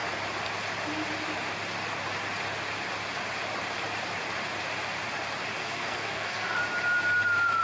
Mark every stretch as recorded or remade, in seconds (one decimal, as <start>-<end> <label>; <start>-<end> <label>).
0.0-5.6 recorded; 5.6-6.6 remade; 6.6-7.6 recorded